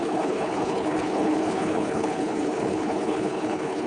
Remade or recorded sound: remade